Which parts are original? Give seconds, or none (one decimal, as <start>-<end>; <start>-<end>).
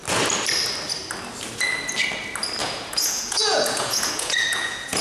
0.0-2.6